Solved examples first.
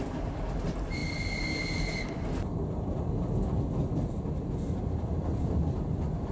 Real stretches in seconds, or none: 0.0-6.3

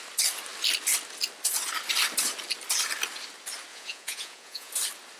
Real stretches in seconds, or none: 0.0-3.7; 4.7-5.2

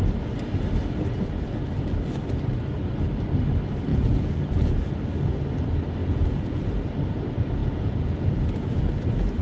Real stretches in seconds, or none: 0.0-3.9; 4.8-6.0; 6.6-7.6; 8.9-9.4

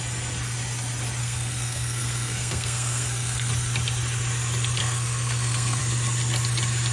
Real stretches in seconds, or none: 0.0-1.2; 3.5-4.8; 5.8-6.9

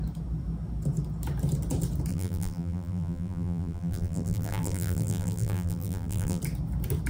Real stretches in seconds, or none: 0.0-2.1; 6.4-7.1

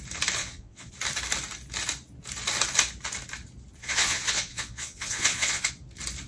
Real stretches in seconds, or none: 0.0-0.4; 0.9-3.8; 5.7-6.3

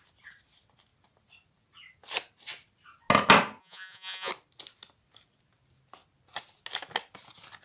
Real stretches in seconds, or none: 0.0-3.6; 4.3-7.6